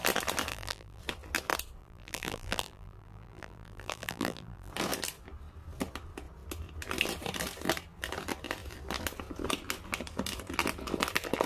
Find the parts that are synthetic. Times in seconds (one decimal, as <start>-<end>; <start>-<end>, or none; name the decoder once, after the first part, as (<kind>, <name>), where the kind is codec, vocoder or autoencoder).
0.5-1.0 (vocoder, BigVGAN v2); 1.8-4.7